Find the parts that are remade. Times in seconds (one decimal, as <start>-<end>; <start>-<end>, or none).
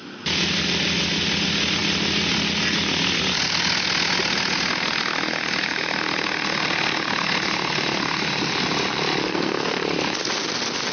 9.2-9.8